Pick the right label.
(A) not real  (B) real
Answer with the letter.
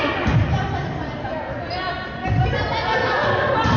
B